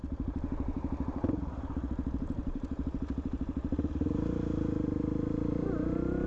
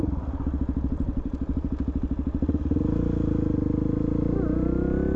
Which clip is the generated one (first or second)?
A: first